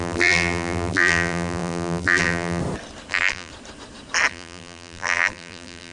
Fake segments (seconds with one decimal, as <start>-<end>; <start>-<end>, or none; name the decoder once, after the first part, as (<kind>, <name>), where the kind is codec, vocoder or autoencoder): 0.0-2.6 (vocoder, BigVGAN v2); 3.1-3.5; 4.3-5.9